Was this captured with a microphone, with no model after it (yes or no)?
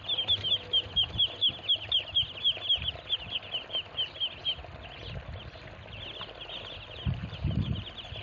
yes